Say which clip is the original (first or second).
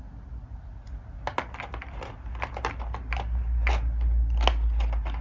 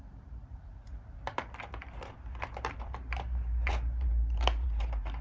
first